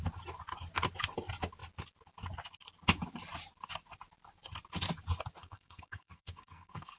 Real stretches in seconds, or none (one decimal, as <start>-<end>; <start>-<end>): 0.0-5.4